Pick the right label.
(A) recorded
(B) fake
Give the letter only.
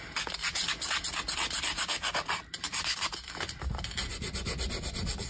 A